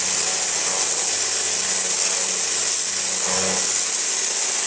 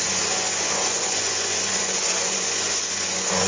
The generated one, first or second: second